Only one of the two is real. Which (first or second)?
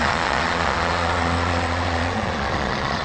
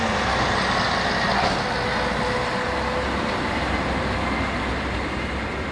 second